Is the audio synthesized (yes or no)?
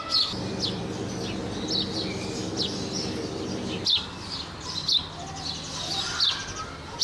no